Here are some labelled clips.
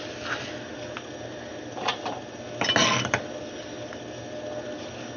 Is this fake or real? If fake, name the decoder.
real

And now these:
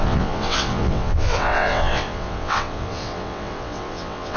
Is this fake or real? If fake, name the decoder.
fake, vocoder, WaveNeXt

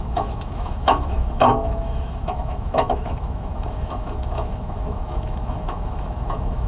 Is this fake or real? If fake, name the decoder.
fake, autoencoder, DAC-VAE